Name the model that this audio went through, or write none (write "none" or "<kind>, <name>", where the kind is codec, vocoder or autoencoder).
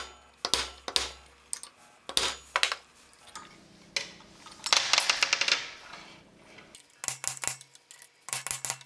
none